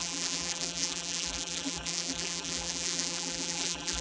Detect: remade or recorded remade